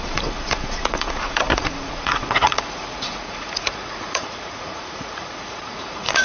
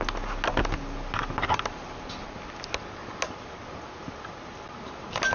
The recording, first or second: second